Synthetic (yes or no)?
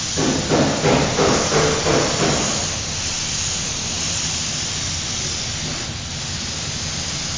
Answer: no